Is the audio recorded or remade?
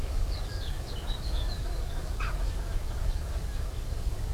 remade